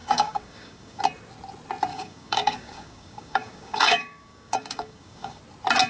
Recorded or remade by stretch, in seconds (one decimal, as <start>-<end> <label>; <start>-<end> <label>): 0.0-1.0 remade; 1.0-1.9 recorded; 1.9-5.4 remade; 5.4-5.9 recorded